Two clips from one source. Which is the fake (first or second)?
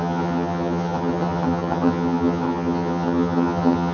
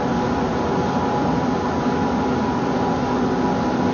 first